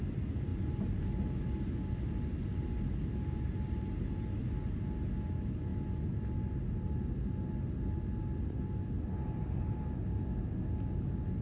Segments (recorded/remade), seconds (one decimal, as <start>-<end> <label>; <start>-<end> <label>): 0.0-11.4 recorded